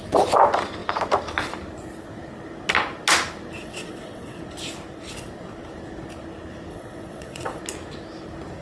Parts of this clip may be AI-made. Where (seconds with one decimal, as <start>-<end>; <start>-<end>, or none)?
3.6-4.4; 6.7-7.6